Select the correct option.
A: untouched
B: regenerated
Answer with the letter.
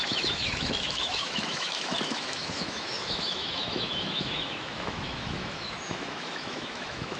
B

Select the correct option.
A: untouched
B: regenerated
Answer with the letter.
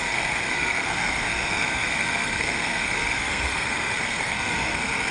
B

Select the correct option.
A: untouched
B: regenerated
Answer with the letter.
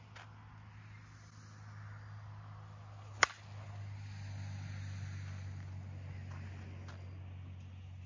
A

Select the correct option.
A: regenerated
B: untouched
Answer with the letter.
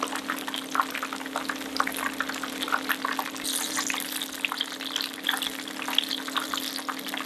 B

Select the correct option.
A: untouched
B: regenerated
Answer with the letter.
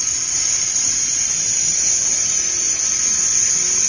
A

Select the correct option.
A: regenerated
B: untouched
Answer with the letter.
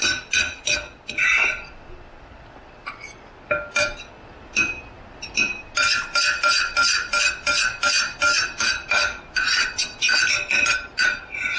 B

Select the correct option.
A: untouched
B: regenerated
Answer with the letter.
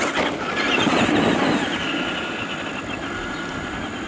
A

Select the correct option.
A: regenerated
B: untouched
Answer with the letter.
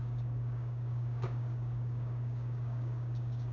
A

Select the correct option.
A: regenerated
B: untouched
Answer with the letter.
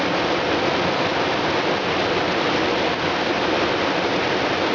B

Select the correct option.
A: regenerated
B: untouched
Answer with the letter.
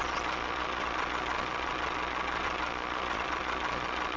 A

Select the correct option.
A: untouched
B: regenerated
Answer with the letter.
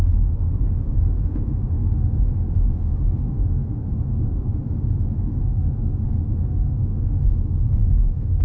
B